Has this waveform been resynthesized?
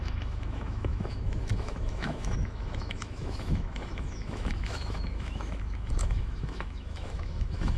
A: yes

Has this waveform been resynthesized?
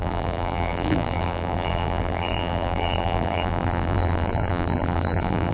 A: yes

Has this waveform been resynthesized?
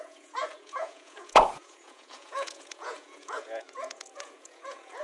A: yes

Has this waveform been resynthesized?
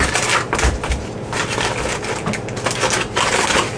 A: no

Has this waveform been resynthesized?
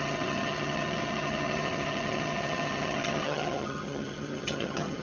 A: yes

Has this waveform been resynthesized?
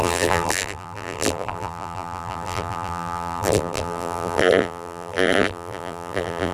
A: yes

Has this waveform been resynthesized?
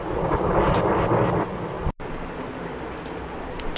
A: no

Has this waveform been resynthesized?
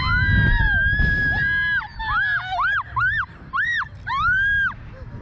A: no